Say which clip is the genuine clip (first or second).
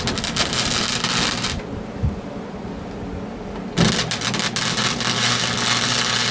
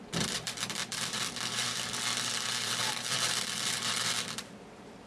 first